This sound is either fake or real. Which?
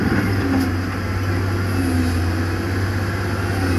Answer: real